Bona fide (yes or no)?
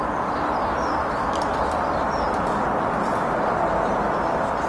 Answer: yes